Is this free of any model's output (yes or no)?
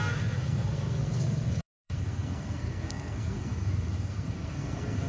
no